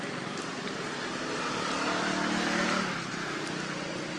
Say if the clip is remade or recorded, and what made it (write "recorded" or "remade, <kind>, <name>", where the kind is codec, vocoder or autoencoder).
recorded